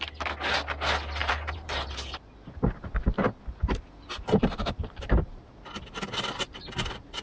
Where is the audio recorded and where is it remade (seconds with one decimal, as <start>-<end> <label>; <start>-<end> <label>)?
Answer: 0.0-1.2 recorded; 1.2-2.1 remade; 2.1-3.6 recorded; 3.6-5.5 remade; 5.5-7.2 recorded